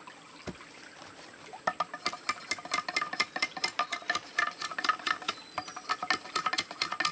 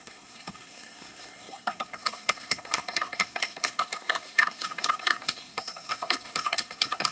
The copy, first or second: second